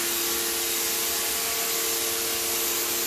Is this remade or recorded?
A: recorded